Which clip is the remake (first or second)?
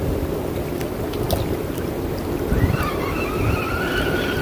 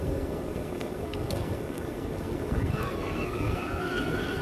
second